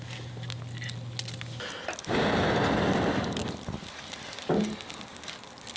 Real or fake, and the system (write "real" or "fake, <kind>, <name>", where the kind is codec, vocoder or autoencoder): real